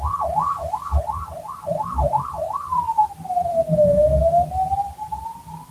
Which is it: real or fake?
real